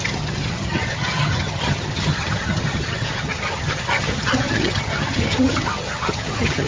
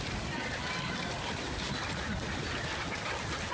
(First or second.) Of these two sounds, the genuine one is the second